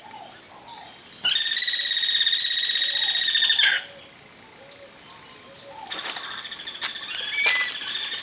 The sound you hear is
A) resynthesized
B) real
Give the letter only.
B